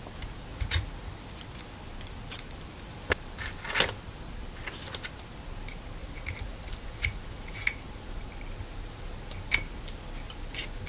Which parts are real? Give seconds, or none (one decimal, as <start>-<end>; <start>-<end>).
0.0-0.5; 1.1-6.0; 8.3-10.9